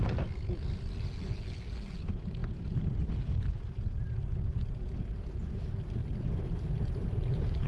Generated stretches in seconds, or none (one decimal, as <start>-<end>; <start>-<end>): 6.0-7.7